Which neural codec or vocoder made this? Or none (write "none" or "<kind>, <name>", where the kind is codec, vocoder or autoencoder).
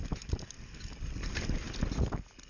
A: none